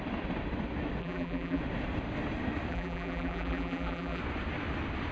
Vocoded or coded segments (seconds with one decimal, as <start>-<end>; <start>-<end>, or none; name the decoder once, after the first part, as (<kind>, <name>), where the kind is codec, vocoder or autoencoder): 1.0-1.6 (vocoder, BigVGAN v2); 2.7-4.2